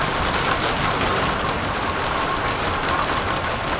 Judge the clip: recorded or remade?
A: recorded